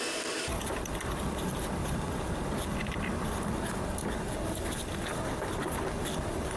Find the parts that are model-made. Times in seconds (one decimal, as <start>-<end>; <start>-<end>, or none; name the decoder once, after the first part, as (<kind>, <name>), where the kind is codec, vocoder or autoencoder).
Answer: 0.0-6.6 (vocoder, BigVGAN v2)